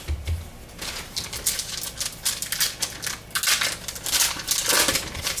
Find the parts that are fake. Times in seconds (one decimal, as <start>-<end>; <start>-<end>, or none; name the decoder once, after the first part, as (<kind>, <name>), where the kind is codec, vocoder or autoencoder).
none